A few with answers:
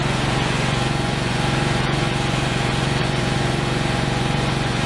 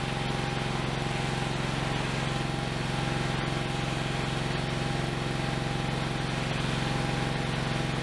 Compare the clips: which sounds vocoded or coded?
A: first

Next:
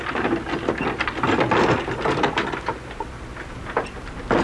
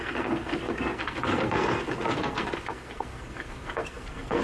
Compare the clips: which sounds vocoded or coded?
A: second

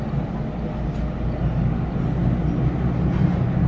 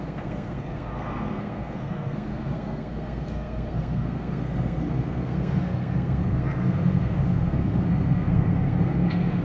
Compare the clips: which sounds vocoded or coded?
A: second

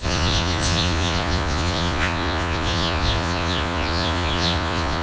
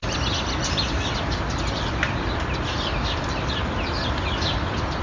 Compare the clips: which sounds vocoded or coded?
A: first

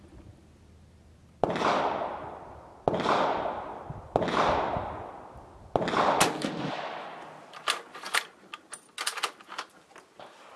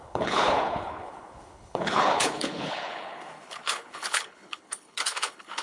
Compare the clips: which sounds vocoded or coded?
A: second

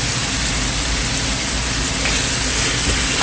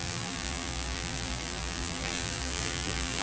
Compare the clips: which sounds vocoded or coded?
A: second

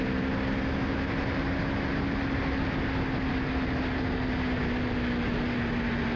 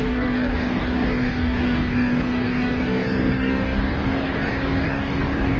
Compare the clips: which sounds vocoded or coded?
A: second